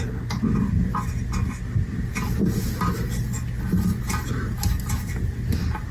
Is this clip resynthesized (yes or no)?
no